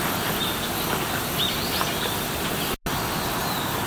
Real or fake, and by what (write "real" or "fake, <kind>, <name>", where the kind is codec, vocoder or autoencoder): real